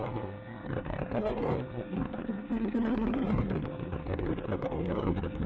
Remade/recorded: remade